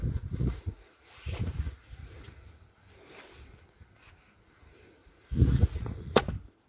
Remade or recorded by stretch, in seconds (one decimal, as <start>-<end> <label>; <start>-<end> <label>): 0.0-2.6 remade; 2.6-5.0 recorded; 5.0-6.2 remade; 6.2-6.7 recorded